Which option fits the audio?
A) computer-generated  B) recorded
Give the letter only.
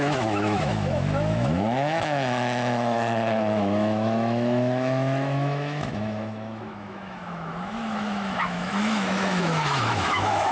A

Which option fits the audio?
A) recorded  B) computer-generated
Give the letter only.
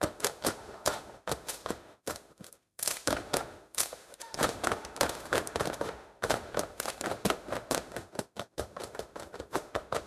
B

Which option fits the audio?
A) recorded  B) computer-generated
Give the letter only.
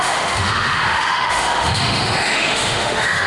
B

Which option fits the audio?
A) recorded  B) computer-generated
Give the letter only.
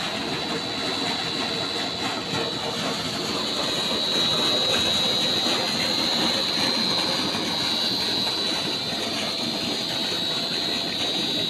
A